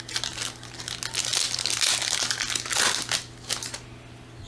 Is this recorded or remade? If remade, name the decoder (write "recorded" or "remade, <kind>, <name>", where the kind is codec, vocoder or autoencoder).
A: recorded